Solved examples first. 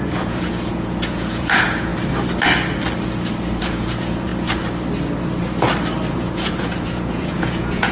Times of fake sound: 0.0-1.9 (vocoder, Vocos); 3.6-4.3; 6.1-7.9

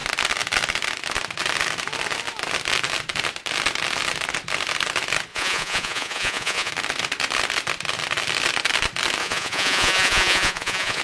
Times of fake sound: 5.3-6.7 (vocoder, Vocos); 9.2-11.0

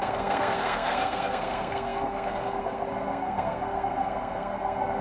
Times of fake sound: 0.0-5.0 (codec, SNAC)

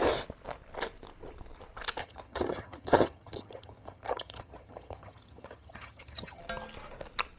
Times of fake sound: 2.0-6.4 (vocoder, HiFi-GAN)

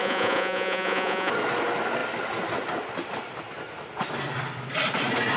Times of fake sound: 0.0-1.3 (vocoder, Vocos)

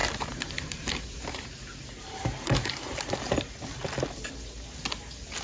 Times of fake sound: 0.0-3.2 (vocoder, BigVGAN v2)